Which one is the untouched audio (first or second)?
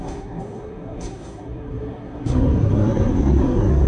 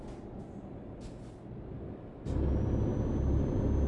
second